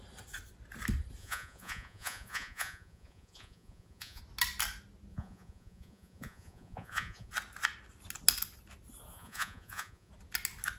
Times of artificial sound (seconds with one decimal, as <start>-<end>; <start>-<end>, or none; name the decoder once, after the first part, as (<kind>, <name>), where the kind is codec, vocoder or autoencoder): 1.2-4.2 (vocoder, Vocos); 5.1-7.3; 9.1-10.1